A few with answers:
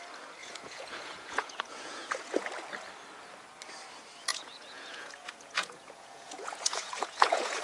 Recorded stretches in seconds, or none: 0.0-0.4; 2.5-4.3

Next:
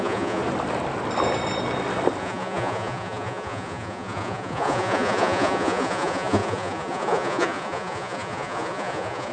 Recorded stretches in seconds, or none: 0.4-2.2

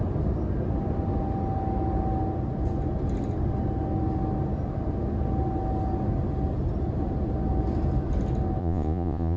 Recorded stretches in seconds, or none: 0.0-8.6

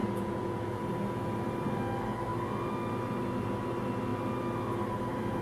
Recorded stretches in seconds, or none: 0.8-5.4

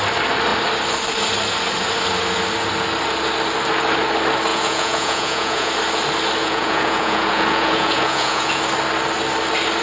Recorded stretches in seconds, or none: 0.0-4.5; 5.7-6.4; 8.6-9.8

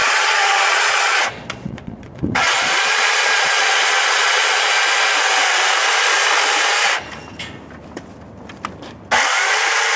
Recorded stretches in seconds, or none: 4.7-10.0

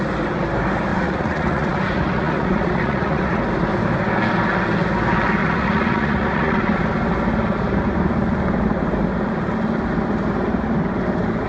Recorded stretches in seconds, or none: 0.0-0.9; 3.4-5.4; 6.8-11.5